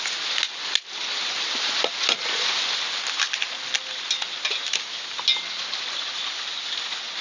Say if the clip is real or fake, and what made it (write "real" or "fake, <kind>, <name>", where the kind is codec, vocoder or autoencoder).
real